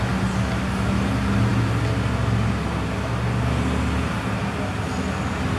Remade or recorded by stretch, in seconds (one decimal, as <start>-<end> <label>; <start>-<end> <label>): 0.0-5.6 recorded